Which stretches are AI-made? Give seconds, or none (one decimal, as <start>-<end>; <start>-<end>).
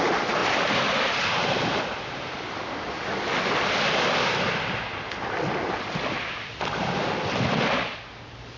0.4-1.8